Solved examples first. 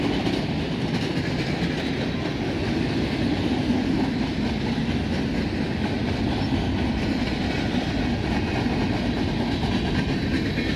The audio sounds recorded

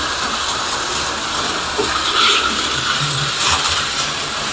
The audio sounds recorded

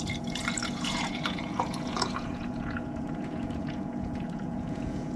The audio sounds remade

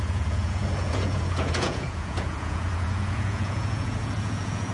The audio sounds remade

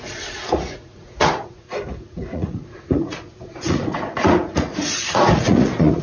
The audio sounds remade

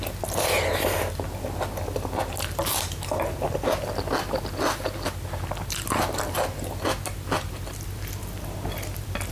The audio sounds recorded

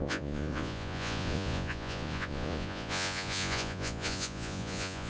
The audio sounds remade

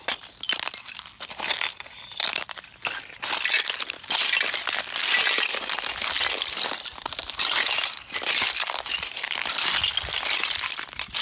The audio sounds recorded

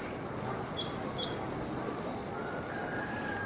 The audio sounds recorded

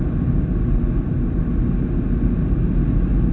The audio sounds recorded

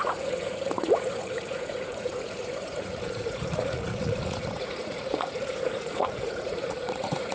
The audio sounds remade